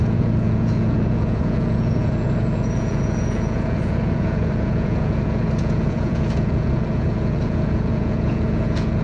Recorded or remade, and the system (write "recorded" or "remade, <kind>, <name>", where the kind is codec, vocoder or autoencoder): remade, vocoder, Vocos